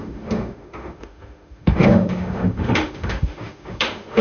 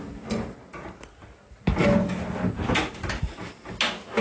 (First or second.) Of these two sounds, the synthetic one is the first